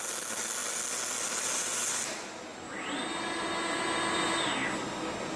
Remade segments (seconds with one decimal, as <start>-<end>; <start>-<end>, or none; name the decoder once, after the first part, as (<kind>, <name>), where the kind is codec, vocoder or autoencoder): none

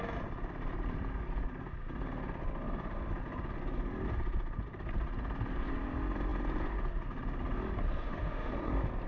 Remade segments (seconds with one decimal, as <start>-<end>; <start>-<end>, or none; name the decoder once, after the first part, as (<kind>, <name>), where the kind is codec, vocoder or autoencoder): 8.0-8.5 (autoencoder, DAC-VAE)

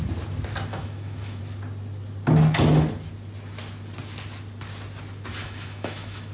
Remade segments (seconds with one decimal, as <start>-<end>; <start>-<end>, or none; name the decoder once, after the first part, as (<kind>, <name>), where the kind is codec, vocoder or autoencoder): 0.7-1.4 (autoencoder, DAC-VAE); 5.4-6.3

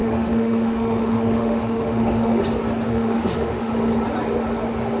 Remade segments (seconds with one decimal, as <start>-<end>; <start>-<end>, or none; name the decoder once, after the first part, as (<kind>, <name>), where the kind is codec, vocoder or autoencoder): 0.0-2.4 (autoencoder, DAC-VAE); 2.9-3.7

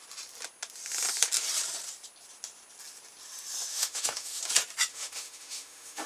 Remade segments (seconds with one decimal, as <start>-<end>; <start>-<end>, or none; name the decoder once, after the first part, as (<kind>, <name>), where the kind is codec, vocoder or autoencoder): 3.7-4.4 (autoencoder, DAC-VAE); 4.9-6.1

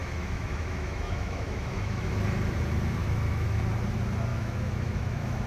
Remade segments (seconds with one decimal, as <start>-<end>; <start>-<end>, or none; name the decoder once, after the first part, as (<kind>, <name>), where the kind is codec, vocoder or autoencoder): 0.0-2.1 (autoencoder, DAC-VAE); 3.0-3.6; 4.3-5.5

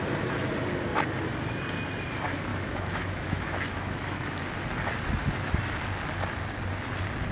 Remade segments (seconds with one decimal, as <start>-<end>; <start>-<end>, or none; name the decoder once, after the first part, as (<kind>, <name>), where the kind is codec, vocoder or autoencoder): 2.5-4.4 (autoencoder, DAC-VAE)

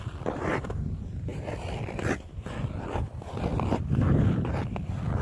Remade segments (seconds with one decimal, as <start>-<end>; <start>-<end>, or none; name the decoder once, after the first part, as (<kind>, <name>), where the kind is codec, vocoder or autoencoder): none